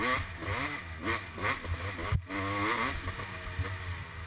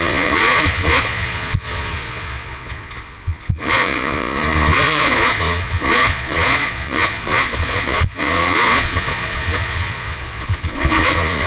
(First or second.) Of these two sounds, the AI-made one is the second